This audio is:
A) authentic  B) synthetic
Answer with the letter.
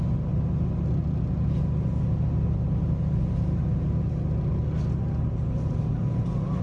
A